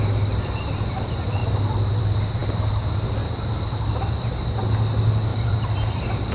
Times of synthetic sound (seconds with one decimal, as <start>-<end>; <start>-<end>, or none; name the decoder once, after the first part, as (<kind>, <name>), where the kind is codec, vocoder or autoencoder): 5.3-6.3 (vocoder, BigVGAN v2)